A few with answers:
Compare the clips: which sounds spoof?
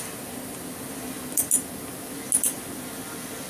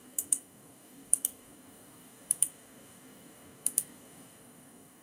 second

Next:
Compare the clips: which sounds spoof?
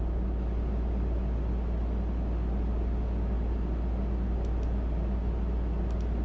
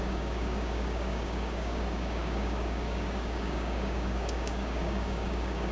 second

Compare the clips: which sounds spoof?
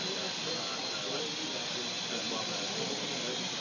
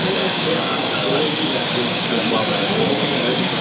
second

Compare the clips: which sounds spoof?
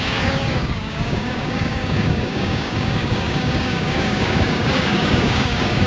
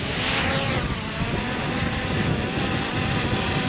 first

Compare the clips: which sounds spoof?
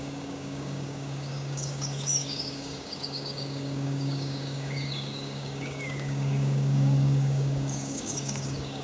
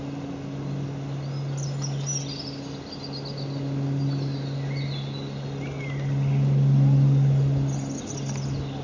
first